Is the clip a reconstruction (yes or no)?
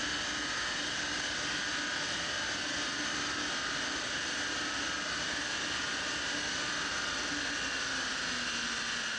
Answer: no